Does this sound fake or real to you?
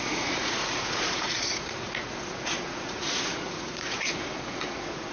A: fake